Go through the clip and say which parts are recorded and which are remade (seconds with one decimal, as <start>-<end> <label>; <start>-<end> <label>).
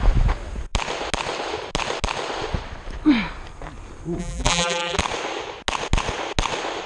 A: 0.0-4.2 recorded; 4.2-5.0 remade; 5.0-6.9 recorded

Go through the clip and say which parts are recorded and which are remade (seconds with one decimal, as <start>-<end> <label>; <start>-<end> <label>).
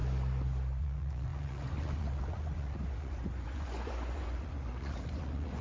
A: 0.0-0.8 recorded; 0.8-5.6 remade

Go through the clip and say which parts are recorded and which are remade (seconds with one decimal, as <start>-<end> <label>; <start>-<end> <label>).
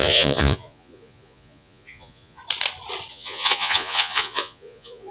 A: 0.0-2.4 remade; 2.4-3.1 recorded; 3.1-5.1 remade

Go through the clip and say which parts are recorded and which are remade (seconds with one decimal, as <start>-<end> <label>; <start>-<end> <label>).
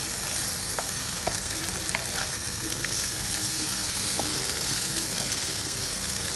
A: 0.0-0.6 recorded; 0.6-1.6 remade; 1.6-2.2 recorded; 2.2-6.3 remade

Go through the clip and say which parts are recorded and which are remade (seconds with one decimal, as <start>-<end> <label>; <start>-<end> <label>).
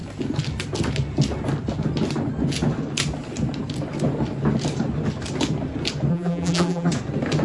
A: 0.0-6.1 recorded; 6.1-6.9 remade; 6.9-7.4 recorded